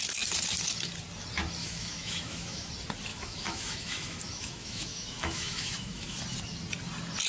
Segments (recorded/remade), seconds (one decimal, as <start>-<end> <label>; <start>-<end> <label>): 0.0-1.6 recorded; 1.6-2.7 remade; 2.7-3.1 recorded; 3.1-6.2 remade; 6.2-7.3 recorded